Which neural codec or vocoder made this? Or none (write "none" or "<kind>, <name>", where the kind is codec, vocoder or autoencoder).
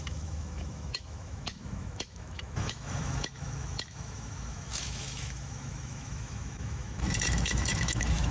autoencoder, DAC-VAE